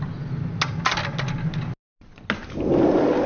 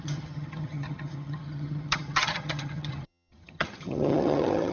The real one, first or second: first